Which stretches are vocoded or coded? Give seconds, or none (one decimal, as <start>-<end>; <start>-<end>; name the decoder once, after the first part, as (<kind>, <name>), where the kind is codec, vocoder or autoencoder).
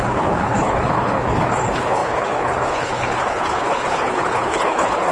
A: 0.0-5.1 (codec, HILCodec)